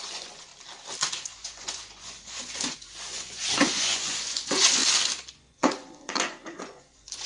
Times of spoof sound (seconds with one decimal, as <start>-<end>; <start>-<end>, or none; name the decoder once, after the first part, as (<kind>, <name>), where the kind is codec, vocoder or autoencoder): 0.0-0.5 (vocoder, Vocos); 1.1-4.8; 5.3-7.3